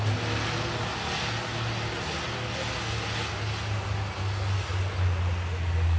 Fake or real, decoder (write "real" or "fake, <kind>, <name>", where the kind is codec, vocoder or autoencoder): real